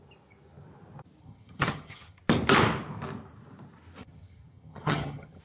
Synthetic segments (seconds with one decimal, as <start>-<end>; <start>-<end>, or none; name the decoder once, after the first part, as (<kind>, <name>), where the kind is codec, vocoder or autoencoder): 1.2-2.2 (vocoder, HiFi-GAN); 4.0-5.4

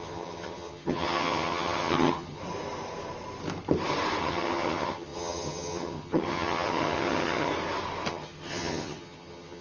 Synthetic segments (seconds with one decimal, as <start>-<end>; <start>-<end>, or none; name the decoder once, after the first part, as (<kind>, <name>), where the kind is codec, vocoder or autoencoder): 0.0-2.4 (vocoder, HiFi-GAN); 4.2-7.5; 8.1-9.6

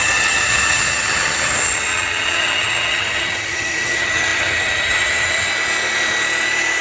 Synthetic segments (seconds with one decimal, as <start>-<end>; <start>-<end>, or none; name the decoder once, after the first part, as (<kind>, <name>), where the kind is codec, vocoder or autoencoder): 0.0-5.5 (vocoder, HiFi-GAN)

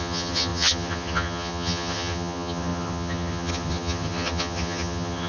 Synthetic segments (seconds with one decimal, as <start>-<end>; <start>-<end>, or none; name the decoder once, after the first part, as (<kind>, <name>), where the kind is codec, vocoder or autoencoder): 0.0-5.3 (vocoder, HiFi-GAN)